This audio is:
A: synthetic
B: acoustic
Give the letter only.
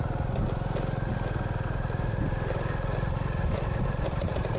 B